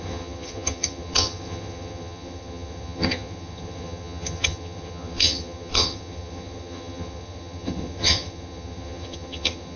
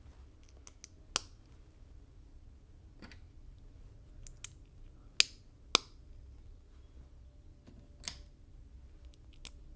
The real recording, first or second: second